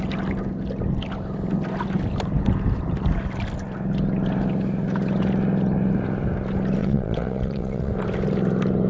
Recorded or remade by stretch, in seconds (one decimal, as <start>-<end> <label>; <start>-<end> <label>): 0.0-6.8 recorded; 6.8-7.9 remade; 7.9-8.9 recorded